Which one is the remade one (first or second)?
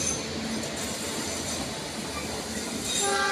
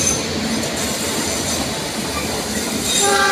second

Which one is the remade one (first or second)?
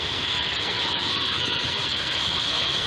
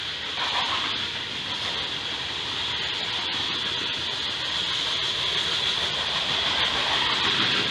first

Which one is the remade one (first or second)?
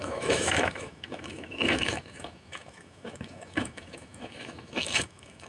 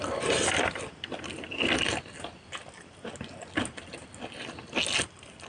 first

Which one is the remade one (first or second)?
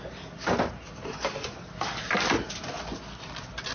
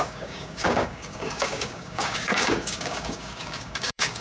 second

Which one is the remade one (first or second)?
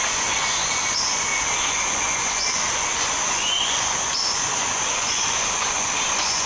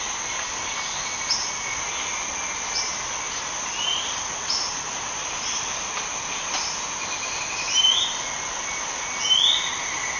first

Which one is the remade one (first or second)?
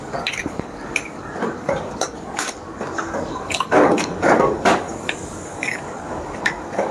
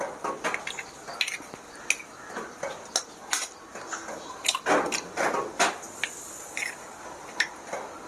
first